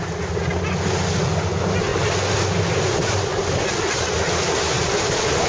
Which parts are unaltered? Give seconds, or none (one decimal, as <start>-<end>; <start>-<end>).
0.0-5.5